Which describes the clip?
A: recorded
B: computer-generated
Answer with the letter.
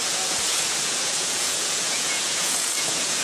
B